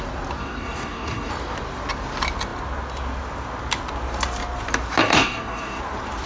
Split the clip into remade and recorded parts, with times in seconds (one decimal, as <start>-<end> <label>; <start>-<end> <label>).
0.0-0.4 recorded; 0.4-1.3 remade; 1.3-5.0 recorded; 5.0-5.8 remade; 5.8-6.3 recorded

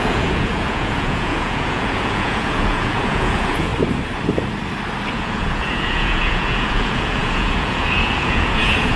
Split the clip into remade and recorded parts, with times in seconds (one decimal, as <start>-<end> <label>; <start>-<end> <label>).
0.0-3.7 remade; 3.7-5.1 recorded; 5.1-9.0 remade

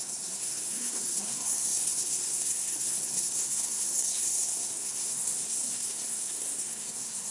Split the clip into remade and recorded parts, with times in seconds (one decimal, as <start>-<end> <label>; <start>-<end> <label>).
0.0-7.3 remade

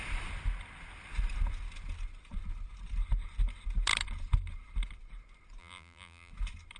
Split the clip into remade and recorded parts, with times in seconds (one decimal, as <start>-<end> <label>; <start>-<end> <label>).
0.0-5.6 recorded; 5.6-6.3 remade; 6.3-6.8 recorded

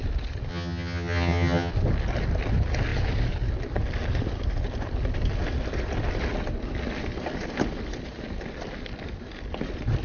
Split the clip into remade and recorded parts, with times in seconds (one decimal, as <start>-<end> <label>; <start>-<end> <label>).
0.0-0.5 recorded; 0.5-1.7 remade; 1.7-10.0 recorded

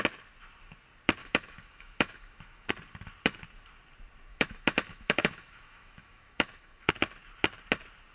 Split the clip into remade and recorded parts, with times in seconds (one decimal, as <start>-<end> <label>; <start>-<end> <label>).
0.0-1.2 recorded; 1.2-2.7 remade; 2.7-4.3 recorded; 4.3-6.9 remade; 6.9-8.1 recorded

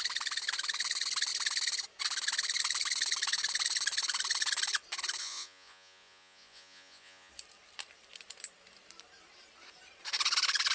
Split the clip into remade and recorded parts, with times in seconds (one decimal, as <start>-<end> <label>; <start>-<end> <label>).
0.0-5.2 recorded; 5.2-7.3 remade; 7.3-10.7 recorded

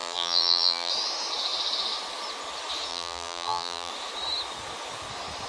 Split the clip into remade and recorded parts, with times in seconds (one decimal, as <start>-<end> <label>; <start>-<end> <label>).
0.0-0.9 remade; 0.9-2.9 recorded; 2.9-3.9 remade; 3.9-5.5 recorded